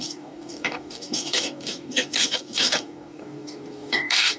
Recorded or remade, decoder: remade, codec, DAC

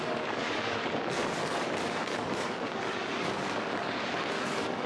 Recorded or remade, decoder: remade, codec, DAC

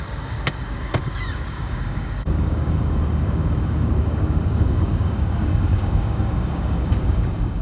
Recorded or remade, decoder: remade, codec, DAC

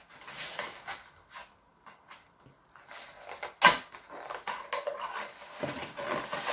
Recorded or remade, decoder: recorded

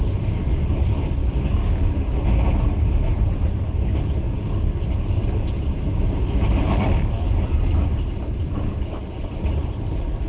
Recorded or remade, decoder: recorded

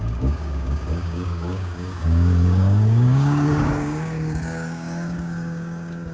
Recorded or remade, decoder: remade, codec, DAC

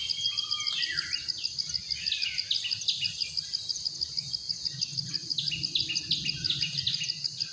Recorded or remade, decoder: recorded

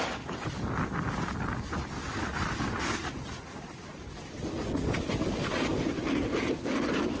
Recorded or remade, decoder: recorded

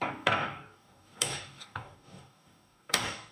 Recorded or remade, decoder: remade, codec, DAC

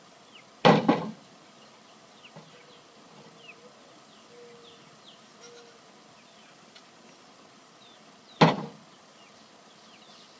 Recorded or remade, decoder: recorded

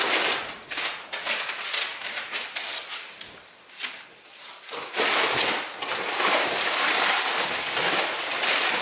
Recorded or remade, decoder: recorded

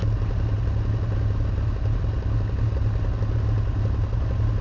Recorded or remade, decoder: recorded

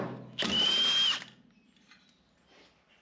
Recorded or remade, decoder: recorded